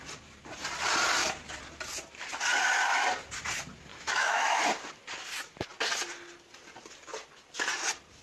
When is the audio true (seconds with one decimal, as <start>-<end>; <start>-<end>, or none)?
0.0-3.9; 4.6-8.2